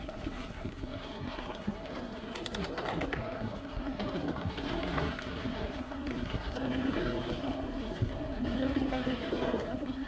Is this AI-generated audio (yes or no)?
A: yes